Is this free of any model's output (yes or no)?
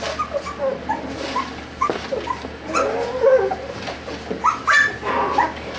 yes